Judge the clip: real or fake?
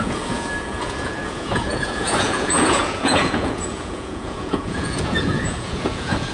fake